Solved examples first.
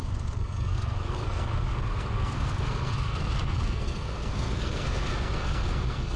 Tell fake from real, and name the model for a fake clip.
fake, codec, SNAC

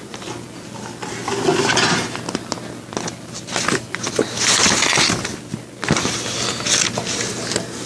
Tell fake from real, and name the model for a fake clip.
real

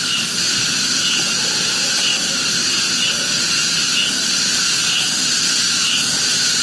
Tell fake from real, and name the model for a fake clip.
real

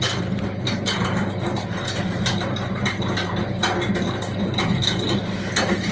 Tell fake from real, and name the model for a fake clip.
real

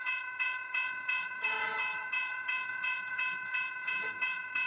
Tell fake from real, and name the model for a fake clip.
fake, vocoder, HiFi-GAN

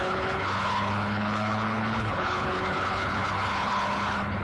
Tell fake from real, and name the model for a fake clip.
fake, codec, HILCodec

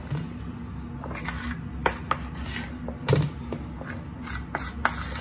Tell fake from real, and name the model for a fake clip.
real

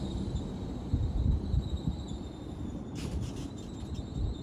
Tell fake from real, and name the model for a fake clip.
real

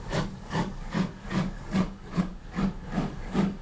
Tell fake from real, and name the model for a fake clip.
fake, codec, DAC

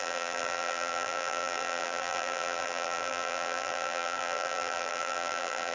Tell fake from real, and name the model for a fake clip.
fake, vocoder, BigVGAN v2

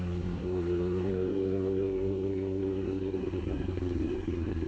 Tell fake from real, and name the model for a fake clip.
fake, codec, SNAC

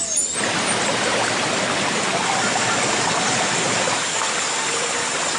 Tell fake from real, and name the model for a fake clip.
real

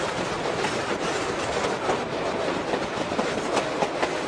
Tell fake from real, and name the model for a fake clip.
real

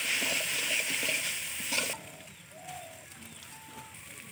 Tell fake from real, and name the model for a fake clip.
real